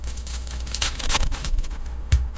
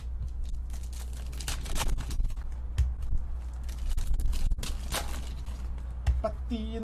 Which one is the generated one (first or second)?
first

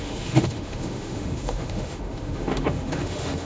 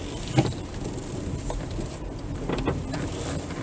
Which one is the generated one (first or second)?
first